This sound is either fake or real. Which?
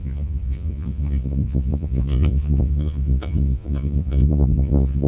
fake